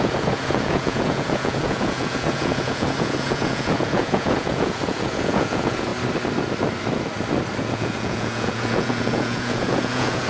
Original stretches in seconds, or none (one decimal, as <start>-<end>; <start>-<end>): 5.9-7.6